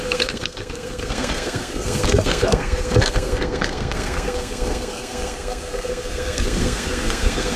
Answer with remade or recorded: remade